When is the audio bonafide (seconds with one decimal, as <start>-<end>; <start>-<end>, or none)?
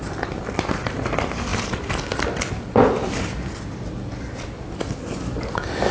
0.0-5.9